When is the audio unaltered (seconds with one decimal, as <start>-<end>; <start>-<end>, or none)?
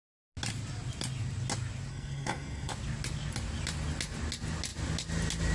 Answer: 0.0-1.9; 2.7-5.5